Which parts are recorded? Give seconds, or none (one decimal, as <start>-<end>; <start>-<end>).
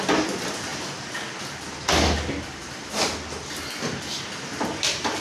0.0-5.2